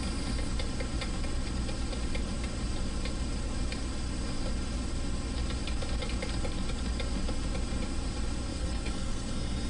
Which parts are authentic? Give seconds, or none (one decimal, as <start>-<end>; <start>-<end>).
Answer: 0.0-8.5